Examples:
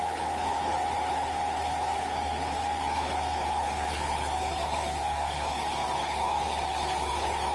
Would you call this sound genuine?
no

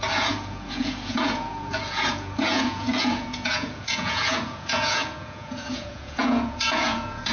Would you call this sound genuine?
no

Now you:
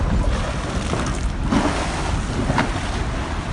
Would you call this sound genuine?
yes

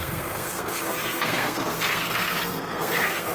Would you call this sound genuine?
no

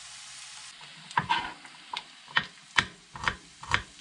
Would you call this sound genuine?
yes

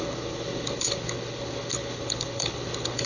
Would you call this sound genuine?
no